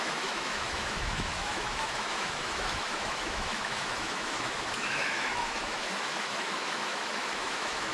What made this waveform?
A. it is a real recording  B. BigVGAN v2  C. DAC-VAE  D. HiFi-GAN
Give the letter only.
C